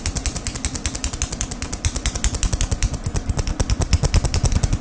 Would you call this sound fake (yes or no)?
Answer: no